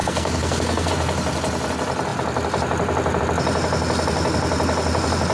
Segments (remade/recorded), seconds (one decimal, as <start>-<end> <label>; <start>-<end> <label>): 0.0-0.9 remade; 0.9-5.3 recorded